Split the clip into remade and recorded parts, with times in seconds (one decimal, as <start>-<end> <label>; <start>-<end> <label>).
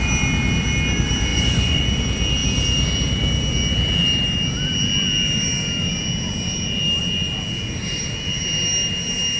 0.0-1.3 recorded; 1.3-1.8 remade; 1.8-9.4 recorded